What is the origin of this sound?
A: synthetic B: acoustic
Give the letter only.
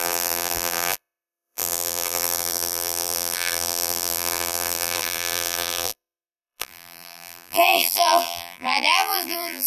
A